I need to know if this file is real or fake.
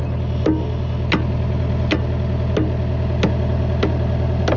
real